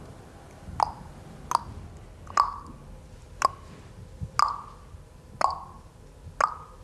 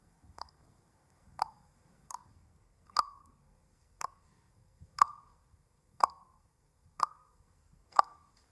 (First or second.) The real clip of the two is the first